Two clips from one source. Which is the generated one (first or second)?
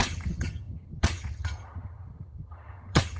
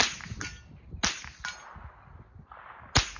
first